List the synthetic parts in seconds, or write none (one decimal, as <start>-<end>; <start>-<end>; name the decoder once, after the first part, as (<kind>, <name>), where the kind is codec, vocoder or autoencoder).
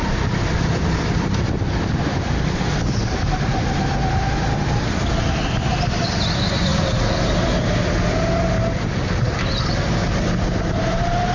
none